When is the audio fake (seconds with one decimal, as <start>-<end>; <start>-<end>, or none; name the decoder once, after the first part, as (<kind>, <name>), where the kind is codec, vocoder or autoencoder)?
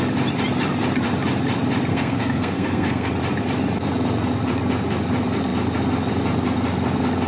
1.9-3.1 (codec, SNAC)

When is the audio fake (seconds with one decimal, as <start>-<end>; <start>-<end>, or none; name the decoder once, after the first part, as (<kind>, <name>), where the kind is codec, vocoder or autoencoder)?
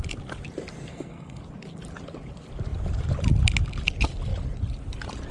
0.9-1.4 (codec, SNAC)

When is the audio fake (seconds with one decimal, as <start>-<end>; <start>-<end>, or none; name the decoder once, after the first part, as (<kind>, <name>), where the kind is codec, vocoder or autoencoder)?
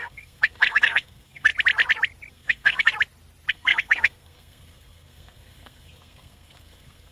0.0-1.5 (codec, SNAC); 2.3-2.9; 3.5-7.1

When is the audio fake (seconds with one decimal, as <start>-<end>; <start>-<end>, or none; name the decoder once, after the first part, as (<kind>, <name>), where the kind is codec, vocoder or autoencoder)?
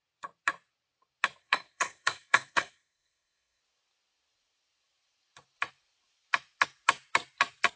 1.4-3.6 (codec, SNAC)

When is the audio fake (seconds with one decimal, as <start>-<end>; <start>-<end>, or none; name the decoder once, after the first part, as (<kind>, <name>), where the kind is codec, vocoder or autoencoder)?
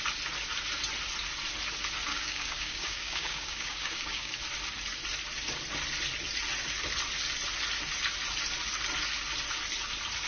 2.1-4.3 (codec, DAC)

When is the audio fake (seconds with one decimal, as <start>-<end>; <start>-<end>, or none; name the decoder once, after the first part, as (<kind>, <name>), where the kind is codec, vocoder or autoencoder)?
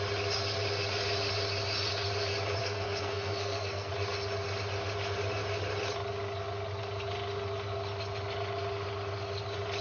2.6-3.9 (codec, SNAC)